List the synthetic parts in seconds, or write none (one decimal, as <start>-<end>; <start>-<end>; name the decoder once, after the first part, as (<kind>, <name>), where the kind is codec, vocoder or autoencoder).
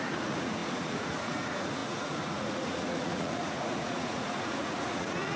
0.0-5.4 (vocoder, Vocos)